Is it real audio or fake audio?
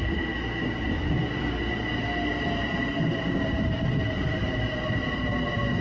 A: real